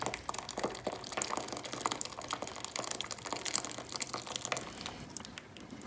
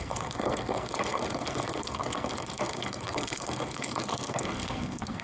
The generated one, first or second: second